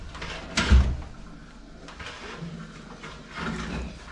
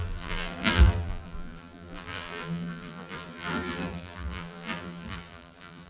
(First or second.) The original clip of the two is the first